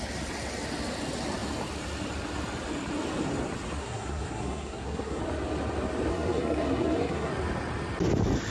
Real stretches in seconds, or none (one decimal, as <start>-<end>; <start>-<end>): 0.0-3.8; 5.2-6.1; 7.3-8.5

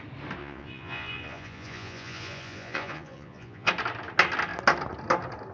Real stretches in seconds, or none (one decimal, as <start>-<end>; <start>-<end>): 0.0-0.4; 3.7-5.5